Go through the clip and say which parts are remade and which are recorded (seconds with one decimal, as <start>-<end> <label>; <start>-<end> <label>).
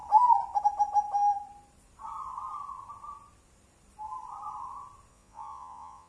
0.0-5.1 recorded; 5.1-6.1 remade